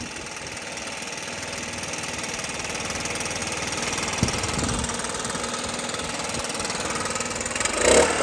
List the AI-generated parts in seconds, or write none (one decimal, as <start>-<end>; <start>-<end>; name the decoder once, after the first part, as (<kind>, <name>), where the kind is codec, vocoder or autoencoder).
none